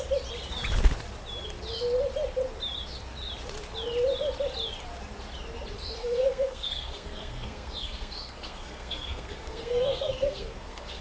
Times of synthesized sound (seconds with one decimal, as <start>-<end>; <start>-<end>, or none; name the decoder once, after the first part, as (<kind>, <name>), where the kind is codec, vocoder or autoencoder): 6.0-11.0 (codec, SNAC)

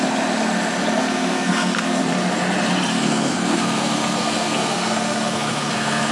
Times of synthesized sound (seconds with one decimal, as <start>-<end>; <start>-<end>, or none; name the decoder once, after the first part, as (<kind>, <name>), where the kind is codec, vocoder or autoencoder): 1.0-2.0 (codec, SNAC); 2.9-6.1

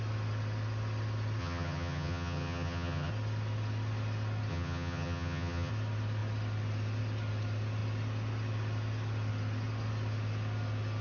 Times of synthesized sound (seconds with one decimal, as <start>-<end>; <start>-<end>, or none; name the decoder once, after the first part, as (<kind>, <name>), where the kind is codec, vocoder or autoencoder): 1.4-3.1 (vocoder, HiFi-GAN); 4.5-5.7

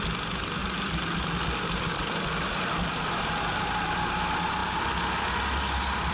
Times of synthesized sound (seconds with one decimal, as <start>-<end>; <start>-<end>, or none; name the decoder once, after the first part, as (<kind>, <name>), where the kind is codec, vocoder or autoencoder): none

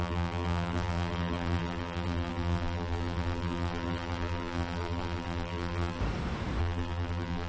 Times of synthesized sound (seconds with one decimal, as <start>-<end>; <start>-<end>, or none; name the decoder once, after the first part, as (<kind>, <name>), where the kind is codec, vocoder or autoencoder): 0.0-6.0 (vocoder, BigVGAN v2); 6.6-7.5

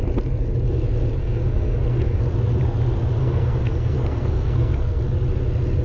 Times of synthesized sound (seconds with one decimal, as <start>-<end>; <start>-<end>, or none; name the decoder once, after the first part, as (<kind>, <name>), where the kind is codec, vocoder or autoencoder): 1.2-2.2 (codec, SNAC); 3.2-5.0

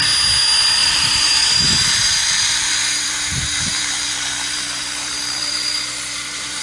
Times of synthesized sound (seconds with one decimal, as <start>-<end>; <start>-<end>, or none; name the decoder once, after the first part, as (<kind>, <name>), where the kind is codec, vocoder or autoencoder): 0.8-1.6 (vocoder, BigVGAN v2); 2.8-6.6